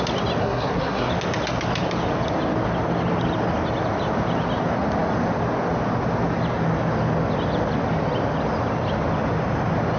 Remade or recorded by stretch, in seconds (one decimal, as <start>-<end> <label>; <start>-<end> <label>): 0.0-0.4 recorded; 0.4-1.1 remade; 1.1-10.0 recorded